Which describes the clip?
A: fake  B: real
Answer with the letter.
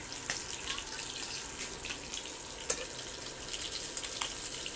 B